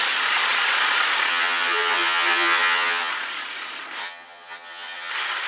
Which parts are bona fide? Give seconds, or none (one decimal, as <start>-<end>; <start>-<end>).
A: 0.0-1.3; 3.1-4.0; 5.1-5.5